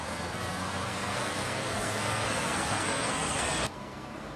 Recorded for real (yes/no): no